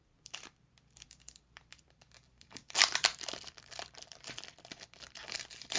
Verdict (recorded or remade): remade